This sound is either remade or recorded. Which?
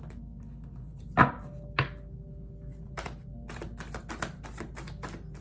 recorded